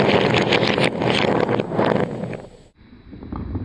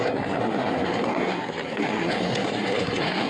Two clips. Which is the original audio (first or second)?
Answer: first